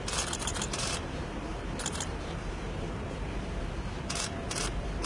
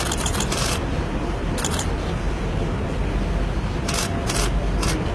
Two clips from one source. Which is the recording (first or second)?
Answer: second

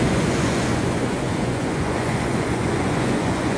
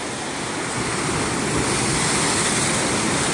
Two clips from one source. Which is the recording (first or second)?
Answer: second